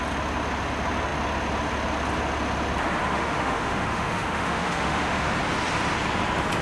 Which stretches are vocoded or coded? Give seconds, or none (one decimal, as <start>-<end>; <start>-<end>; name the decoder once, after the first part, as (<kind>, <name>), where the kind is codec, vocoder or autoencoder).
3.1-5.3 (autoencoder, DAC-VAE)